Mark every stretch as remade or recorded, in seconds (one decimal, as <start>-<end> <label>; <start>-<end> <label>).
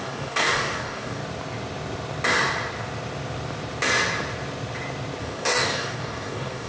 0.0-1.2 remade; 1.2-5.2 recorded; 5.2-6.7 remade